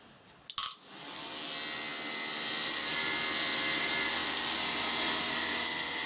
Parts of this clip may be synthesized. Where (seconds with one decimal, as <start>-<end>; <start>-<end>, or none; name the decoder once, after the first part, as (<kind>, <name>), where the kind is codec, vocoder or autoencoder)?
none